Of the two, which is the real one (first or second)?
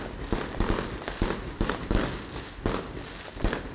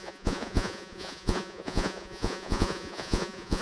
first